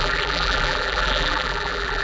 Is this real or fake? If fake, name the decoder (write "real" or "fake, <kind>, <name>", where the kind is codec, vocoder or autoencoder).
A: fake, vocoder, BigVGAN v2